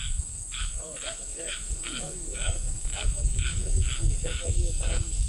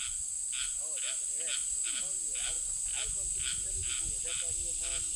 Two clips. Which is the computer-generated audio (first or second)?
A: first